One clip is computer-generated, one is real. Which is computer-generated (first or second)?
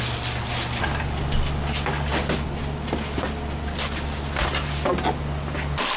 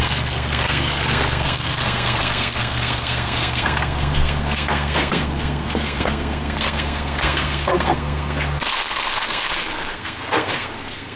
second